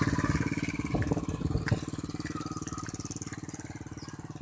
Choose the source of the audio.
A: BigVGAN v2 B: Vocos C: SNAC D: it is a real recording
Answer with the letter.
D